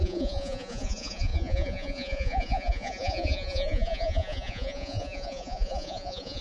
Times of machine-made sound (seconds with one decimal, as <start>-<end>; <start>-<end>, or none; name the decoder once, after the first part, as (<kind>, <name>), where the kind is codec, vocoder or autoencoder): 0.0-6.4 (vocoder, Vocos)